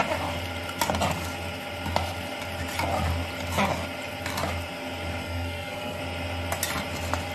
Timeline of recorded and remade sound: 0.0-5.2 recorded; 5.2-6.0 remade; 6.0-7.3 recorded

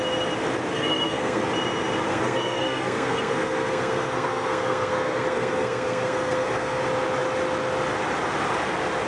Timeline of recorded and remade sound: 0.0-0.7 recorded; 0.7-1.4 remade; 1.4-2.1 recorded; 2.1-6.8 remade; 6.8-9.1 recorded

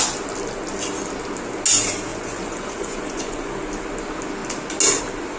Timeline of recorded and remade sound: 0.0-2.1 recorded; 2.1-3.6 remade; 3.6-5.4 recorded

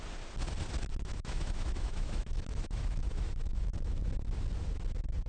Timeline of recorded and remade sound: 0.0-0.9 recorded; 0.9-4.1 remade; 4.1-5.3 recorded

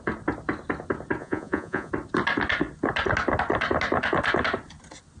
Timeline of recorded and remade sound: 0.0-1.2 recorded; 1.2-1.9 remade; 1.9-5.2 recorded

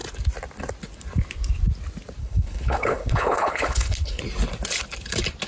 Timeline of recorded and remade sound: 0.0-2.2 recorded; 2.2-4.2 remade; 4.2-5.5 recorded

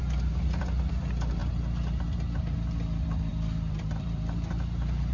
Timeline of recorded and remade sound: 0.0-1.4 remade; 1.4-2.7 recorded; 2.7-5.1 remade

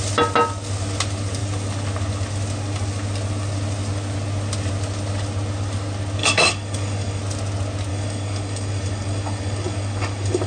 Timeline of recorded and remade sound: 0.0-6.2 recorded; 6.2-7.2 remade; 7.2-7.9 recorded; 7.9-10.5 remade